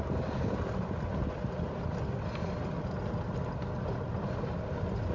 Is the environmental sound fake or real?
real